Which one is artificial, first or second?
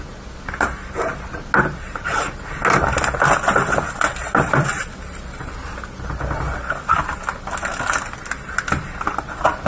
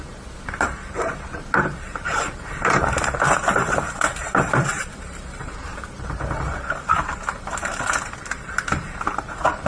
second